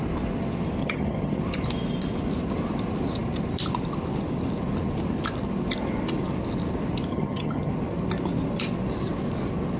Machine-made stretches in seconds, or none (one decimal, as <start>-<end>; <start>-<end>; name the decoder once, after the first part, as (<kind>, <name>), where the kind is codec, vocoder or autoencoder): 0.8-1.4 (vocoder, HiFi-GAN); 7.1-7.7